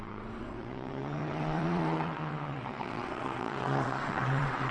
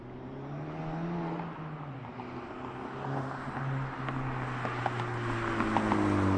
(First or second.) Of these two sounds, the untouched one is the second